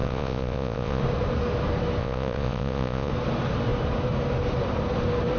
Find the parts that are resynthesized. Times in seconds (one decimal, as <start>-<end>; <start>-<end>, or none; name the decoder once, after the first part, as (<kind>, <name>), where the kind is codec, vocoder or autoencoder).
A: 0.0-1.0 (vocoder, Vocos); 2.0-3.1